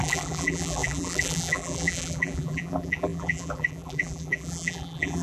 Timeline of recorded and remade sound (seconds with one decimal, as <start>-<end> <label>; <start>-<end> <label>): 0.0-5.2 remade